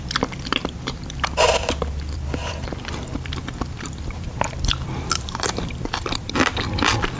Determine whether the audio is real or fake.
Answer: fake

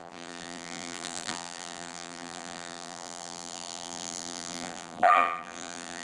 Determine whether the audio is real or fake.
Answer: fake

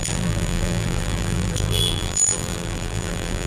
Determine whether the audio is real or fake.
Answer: fake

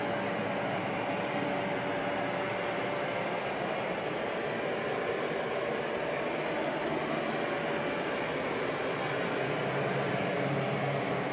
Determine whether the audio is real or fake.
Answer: real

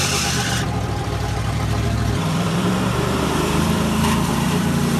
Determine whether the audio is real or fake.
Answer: fake